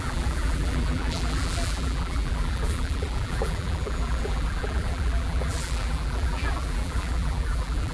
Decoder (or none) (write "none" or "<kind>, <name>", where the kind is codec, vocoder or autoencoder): vocoder, BigVGAN v2